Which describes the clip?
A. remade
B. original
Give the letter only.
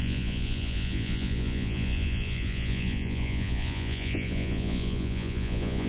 A